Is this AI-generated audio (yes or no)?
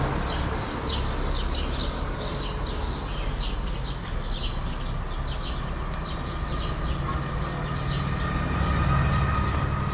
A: no